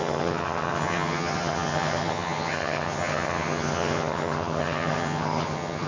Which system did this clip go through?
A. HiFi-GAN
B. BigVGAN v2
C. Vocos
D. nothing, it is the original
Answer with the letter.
A